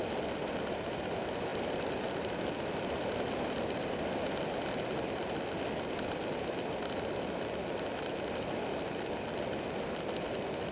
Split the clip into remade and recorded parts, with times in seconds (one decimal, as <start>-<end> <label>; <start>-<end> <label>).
0.0-10.7 recorded